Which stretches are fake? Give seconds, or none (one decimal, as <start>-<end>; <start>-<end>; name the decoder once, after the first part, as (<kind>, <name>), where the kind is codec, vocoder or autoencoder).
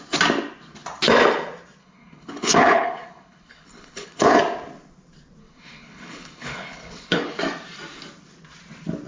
1.8-4.4 (codec, HILCodec); 5.4-7.4